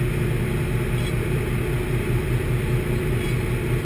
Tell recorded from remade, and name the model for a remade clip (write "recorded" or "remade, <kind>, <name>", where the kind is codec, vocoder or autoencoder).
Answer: recorded